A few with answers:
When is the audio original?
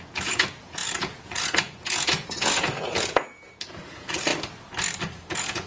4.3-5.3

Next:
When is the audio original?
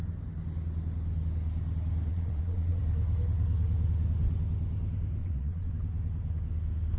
0.0-2.1; 2.8-5.2; 5.7-7.0